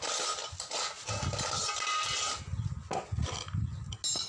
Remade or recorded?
recorded